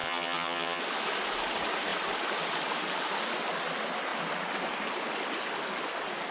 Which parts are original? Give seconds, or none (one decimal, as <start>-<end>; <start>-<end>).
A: 0.8-6.3